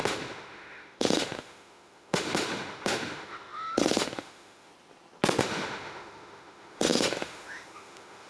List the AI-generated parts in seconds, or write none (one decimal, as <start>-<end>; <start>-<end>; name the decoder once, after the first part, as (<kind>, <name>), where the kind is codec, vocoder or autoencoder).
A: 0.0-4.7 (autoencoder, DAC-VAE); 5.4-8.3